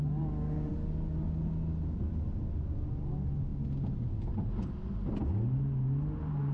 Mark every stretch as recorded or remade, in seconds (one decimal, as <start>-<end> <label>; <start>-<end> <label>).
0.0-6.5 recorded